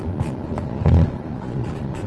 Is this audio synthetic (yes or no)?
yes